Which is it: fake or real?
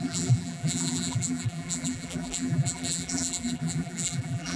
fake